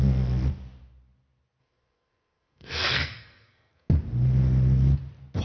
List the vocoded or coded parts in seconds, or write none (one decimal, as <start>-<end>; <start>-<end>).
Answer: 1.6-3.9